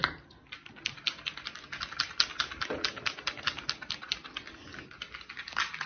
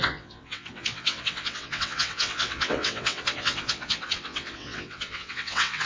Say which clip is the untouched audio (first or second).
first